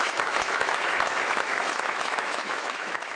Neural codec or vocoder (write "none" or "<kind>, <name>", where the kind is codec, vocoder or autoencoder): autoencoder, DAC-VAE